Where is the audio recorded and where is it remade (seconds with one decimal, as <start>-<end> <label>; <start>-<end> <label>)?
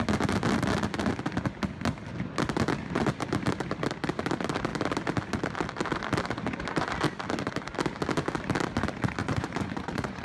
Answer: 0.0-9.2 recorded; 9.2-10.2 remade